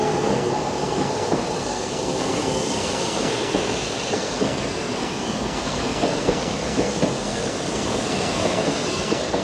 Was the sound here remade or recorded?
remade